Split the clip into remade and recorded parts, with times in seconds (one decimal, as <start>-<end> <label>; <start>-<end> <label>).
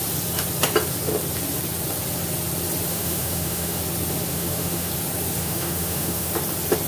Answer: 0.0-2.9 recorded; 2.9-3.8 remade; 3.8-4.3 recorded; 4.3-4.9 remade; 4.9-5.4 recorded; 5.4-6.3 remade; 6.3-6.9 recorded